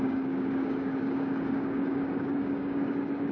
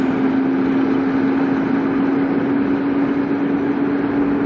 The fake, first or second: first